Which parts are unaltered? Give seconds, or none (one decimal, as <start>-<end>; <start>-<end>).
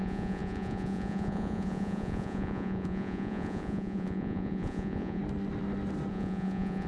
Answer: 5.2-6.1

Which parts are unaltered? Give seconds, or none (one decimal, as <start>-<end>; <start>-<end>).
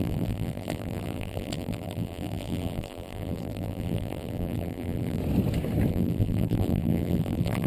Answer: 5.2-5.9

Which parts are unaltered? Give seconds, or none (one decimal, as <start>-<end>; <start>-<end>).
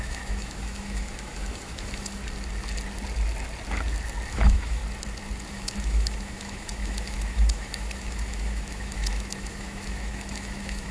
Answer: 2.2-4.3; 4.8-5.5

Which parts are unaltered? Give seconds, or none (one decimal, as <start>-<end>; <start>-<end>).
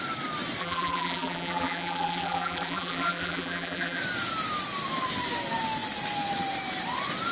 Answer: 0.0-0.6; 4.0-7.3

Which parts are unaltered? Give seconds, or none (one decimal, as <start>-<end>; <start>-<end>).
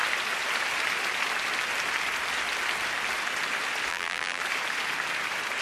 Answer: 0.0-3.9; 4.4-5.6